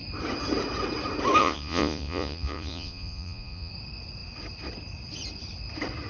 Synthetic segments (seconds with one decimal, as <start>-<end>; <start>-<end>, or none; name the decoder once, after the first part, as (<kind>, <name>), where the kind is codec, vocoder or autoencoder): 1.4-3.7 (vocoder, Vocos)